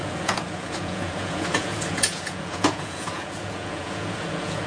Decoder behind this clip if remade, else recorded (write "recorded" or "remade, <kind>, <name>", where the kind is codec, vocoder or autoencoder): remade, vocoder, Vocos